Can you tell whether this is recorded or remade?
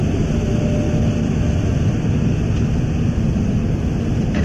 recorded